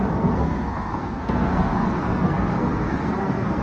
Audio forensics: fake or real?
fake